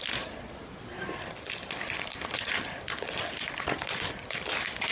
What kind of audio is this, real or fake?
real